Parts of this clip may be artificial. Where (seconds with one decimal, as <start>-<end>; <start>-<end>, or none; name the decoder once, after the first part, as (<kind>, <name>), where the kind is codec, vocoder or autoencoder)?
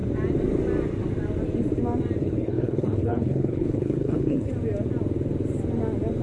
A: 2.2-4.5 (codec, HILCodec)